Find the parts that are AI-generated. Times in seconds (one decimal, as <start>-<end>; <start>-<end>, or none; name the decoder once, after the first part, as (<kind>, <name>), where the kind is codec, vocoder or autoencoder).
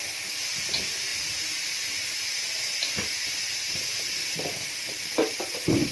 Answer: none